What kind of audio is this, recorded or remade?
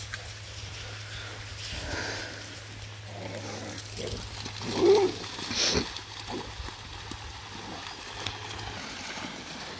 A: recorded